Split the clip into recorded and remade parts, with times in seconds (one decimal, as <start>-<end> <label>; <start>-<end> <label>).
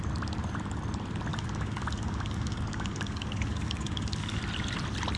0.0-1.3 recorded; 1.3-4.4 remade; 4.4-5.2 recorded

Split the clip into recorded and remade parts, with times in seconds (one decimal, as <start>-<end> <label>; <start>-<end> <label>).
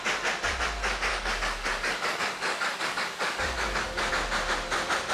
0.0-1.1 recorded; 1.1-4.1 remade; 4.1-5.1 recorded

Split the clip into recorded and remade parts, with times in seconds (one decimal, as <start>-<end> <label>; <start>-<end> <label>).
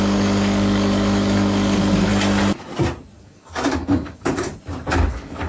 0.0-2.1 remade; 2.1-3.2 recorded; 3.2-4.5 remade; 4.5-5.1 recorded; 5.1-5.5 remade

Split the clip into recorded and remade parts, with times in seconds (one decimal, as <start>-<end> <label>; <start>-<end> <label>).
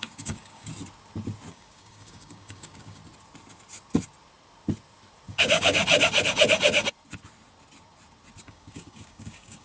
0.0-0.7 remade; 0.7-1.5 recorded; 1.5-3.0 remade; 3.0-5.3 recorded; 5.3-5.8 remade; 5.8-8.4 recorded; 8.4-9.6 remade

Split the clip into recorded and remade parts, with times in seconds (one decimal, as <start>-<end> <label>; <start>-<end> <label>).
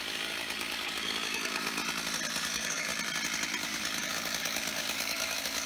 0.0-1.8 remade; 1.8-2.4 recorded; 2.4-2.9 remade; 2.9-3.6 recorded; 3.6-5.7 remade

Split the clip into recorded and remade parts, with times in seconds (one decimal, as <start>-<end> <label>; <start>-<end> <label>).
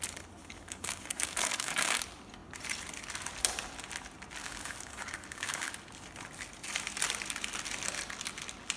0.0-0.4 recorded; 0.4-2.0 remade; 2.0-4.4 recorded; 4.4-5.7 remade; 5.7-8.8 recorded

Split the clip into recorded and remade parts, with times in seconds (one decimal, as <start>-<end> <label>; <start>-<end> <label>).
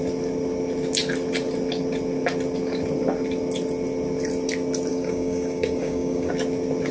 0.0-4.9 recorded; 4.9-6.3 remade; 6.3-6.9 recorded